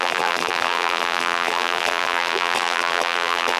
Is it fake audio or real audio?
fake